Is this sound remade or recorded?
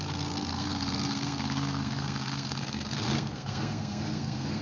remade